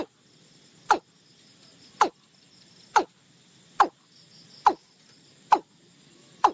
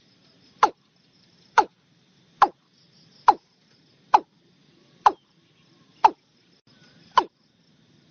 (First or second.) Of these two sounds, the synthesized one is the second